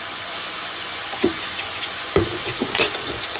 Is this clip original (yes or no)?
no